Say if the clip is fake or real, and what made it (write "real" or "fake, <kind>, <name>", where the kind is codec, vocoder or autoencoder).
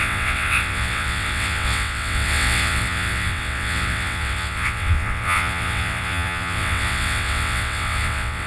fake, vocoder, WaveNeXt